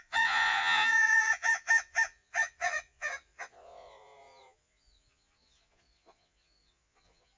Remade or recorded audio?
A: remade